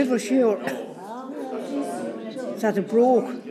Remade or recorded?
recorded